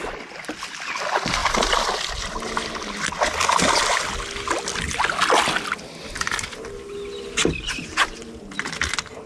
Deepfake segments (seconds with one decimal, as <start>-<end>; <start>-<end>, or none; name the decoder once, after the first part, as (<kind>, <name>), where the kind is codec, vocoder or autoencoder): none